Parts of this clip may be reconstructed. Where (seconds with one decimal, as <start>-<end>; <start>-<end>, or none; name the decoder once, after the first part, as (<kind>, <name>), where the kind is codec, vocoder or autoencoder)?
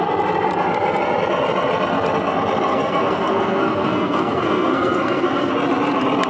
2.7-5.5 (codec, SNAC)